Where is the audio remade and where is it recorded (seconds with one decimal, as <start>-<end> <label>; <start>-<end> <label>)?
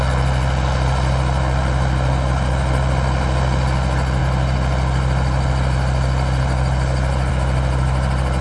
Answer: 0.0-8.4 recorded